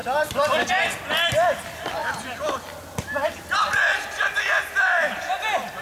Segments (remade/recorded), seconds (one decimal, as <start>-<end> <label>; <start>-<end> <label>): 0.0-5.8 recorded